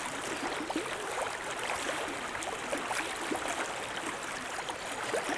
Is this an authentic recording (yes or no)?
yes